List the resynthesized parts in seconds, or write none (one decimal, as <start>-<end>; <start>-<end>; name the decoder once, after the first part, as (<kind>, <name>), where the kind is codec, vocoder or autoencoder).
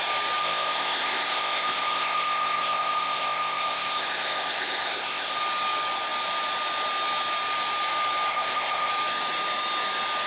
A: 0.4-5.4 (codec, ZipCodec); 8.3-8.9